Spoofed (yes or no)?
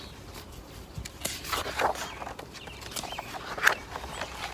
no